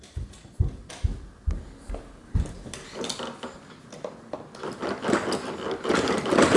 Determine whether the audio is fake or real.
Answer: real